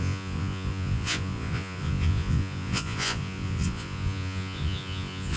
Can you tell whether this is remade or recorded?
remade